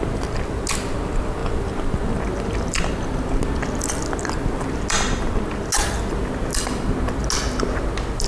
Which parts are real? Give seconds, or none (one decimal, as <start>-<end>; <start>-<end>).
0.0-8.3